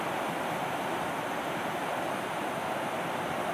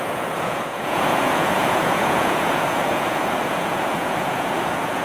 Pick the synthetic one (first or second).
second